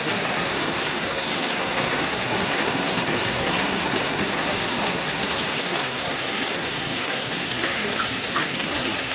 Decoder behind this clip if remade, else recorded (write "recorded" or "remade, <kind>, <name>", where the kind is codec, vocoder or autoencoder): remade, codec, SNAC